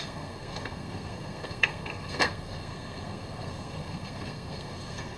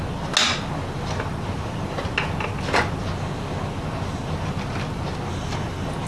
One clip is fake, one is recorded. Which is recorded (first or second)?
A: second